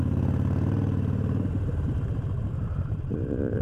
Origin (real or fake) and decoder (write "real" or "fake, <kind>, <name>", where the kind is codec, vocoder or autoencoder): fake, vocoder, BigVGAN v2